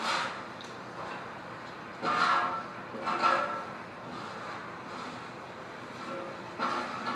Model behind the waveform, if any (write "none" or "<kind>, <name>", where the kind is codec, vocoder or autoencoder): none